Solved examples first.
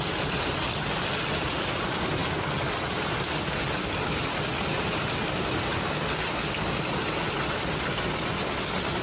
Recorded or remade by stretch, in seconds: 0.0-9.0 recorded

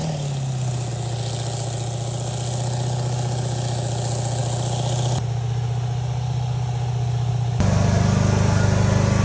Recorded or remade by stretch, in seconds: 0.0-9.2 recorded

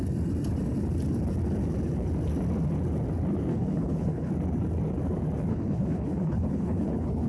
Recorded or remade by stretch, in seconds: 0.0-3.5 recorded; 3.5-4.3 remade; 4.3-5.5 recorded; 5.5-7.3 remade

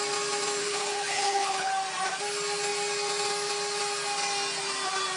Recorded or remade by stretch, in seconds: 0.0-0.6 recorded; 0.6-1.7 remade; 1.7-5.2 recorded

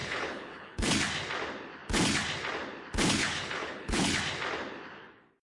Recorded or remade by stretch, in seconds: 0.0-0.9 remade; 0.9-3.2 recorded; 3.2-4.2 remade; 4.2-5.5 recorded

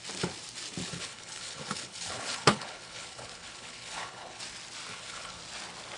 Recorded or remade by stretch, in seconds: 0.0-0.8 recorded; 0.8-4.4 remade; 4.4-4.9 recorded; 4.9-5.4 remade; 5.4-6.0 recorded